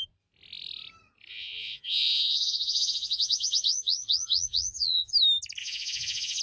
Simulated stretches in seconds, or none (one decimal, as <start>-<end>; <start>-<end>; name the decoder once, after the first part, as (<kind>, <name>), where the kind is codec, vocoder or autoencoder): 1.3-5.1 (vocoder, Vocos); 5.6-6.4